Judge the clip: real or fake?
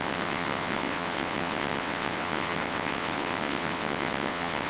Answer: fake